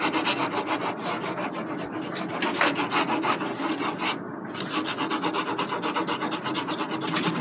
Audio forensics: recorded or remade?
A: recorded